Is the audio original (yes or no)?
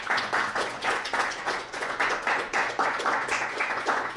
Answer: no